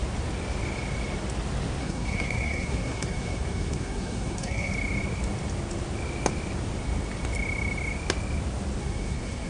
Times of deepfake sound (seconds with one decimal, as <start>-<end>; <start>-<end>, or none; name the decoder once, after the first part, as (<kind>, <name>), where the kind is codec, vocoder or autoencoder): 1.8-4.7 (codec, SNAC); 8.8-9.5